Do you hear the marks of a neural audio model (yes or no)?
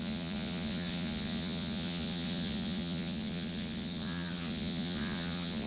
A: yes